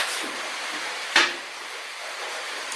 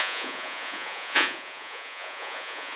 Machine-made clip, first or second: second